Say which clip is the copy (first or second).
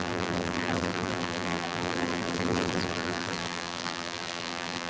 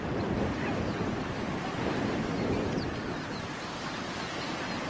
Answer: first